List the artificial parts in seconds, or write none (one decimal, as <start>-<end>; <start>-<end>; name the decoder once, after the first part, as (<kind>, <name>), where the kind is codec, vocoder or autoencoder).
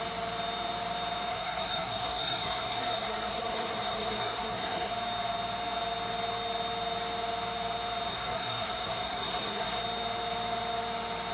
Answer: 1.3-4.9 (codec, SNAC); 8.1-9.8